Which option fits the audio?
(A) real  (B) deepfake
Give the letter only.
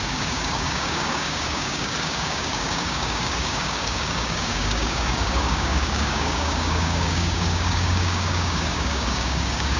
B